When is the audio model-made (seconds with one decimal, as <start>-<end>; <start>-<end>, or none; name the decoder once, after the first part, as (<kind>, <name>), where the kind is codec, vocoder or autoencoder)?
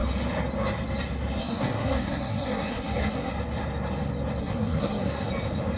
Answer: 1.4-3.3 (codec, SNAC); 4.4-5.3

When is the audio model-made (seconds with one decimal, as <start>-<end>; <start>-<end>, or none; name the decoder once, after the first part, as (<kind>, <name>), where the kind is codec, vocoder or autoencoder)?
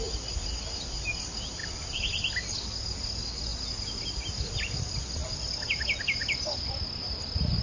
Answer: none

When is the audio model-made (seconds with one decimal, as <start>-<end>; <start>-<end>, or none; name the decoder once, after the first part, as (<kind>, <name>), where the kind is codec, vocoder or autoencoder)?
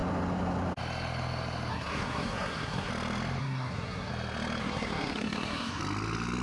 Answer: 1.7-2.9 (codec, SNAC); 3.4-4.1; 4.6-5.8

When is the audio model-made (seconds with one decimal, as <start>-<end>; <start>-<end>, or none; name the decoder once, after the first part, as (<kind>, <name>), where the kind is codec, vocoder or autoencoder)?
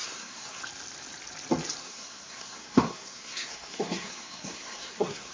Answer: 0.0-0.6 (codec, SNAC); 1.8-5.3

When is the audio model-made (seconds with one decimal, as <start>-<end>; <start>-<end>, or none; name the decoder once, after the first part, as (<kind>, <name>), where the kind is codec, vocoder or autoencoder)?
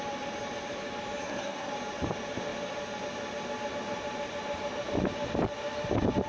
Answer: 1.2-1.7 (codec, SNAC)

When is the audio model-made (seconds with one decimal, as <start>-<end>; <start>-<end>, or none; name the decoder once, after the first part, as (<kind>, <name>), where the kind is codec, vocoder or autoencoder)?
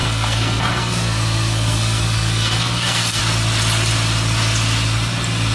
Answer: 0.0-3.2 (codec, SNAC)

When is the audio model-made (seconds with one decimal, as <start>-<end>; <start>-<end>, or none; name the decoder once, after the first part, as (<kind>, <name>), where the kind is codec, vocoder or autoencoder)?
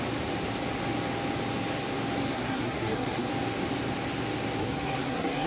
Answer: 2.3-3.3 (codec, SNAC); 4.6-5.5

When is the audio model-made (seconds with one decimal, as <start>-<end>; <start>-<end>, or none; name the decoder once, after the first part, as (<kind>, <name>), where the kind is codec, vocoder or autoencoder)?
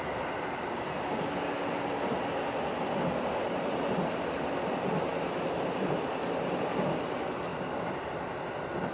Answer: none